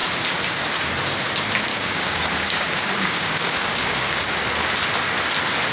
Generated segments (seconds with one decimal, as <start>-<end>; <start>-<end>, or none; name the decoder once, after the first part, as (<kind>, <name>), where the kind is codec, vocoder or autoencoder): 1.7-4.2 (codec, DAC)